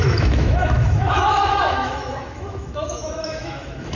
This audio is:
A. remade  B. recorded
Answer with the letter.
A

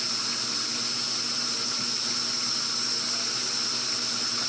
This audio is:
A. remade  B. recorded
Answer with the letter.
B